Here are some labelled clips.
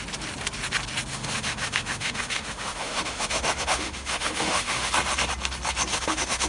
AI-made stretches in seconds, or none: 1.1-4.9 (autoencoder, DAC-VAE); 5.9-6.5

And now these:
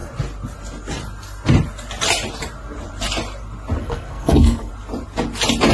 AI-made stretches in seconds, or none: 3.8-4.7 (codec, SNAC)

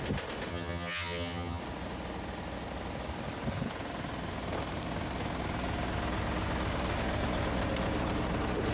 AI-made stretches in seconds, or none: 0.5-1.6 (vocoder, HiFi-GAN)

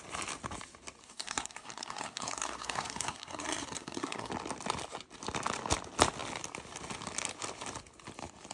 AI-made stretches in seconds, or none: 1.0-4.3 (codec, SNAC)

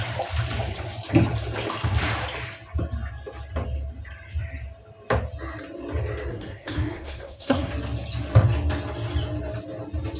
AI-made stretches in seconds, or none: 6.3-7.7 (codec, SNAC)

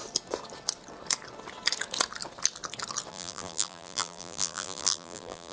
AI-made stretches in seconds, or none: 3.1-5.5 (vocoder, BigVGAN v2)